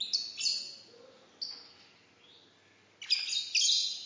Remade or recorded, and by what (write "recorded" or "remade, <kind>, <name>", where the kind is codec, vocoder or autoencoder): recorded